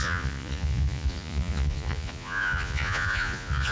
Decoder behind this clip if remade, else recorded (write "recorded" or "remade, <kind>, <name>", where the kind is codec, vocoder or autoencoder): remade, vocoder, Vocos